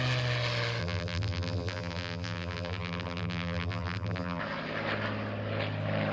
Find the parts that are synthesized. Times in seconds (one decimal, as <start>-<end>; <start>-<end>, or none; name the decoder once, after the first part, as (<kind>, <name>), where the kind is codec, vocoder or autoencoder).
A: 0.8-4.4 (vocoder, BigVGAN v2)